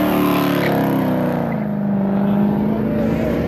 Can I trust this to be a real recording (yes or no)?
yes